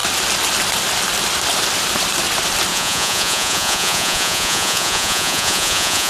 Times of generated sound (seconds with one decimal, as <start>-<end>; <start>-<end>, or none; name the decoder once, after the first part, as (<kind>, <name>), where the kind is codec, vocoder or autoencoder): 2.7-6.1 (vocoder, Vocos)